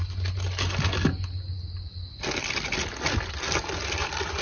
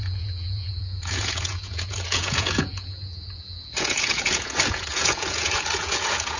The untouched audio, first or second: first